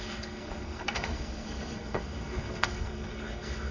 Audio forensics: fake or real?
fake